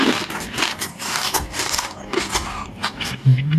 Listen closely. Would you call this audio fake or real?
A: fake